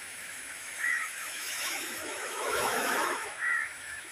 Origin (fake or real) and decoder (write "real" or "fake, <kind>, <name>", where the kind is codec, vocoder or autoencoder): fake, autoencoder, DAC-VAE